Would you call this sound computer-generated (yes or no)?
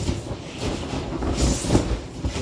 no